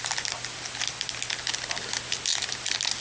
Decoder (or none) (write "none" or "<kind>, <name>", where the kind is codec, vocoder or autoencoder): none